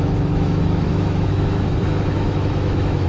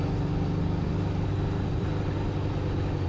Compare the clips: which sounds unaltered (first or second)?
second